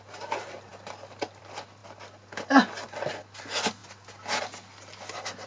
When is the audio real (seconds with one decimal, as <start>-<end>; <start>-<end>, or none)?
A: 0.0-5.5